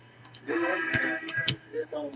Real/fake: fake